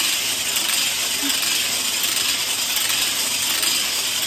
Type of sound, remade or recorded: recorded